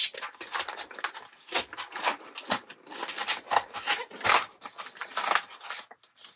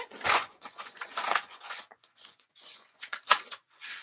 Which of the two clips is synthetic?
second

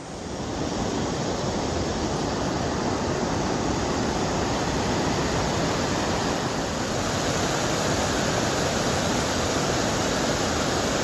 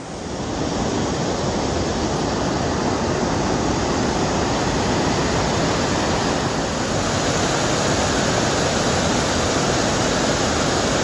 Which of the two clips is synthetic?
first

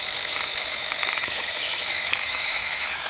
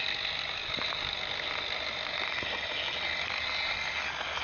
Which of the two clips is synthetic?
first